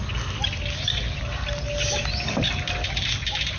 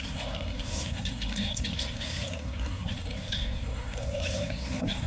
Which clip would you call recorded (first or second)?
first